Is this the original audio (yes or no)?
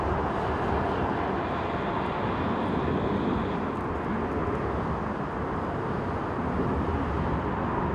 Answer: yes